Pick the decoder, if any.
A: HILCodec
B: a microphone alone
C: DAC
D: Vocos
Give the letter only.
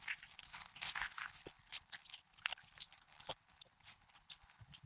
A